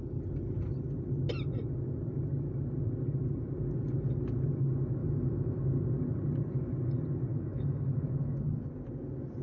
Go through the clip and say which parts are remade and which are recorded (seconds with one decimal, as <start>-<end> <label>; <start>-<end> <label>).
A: 0.0-5.0 recorded; 5.0-5.6 remade; 5.6-7.3 recorded; 7.3-8.7 remade; 8.7-9.4 recorded